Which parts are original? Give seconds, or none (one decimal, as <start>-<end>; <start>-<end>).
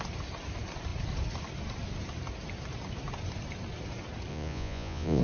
0.0-4.3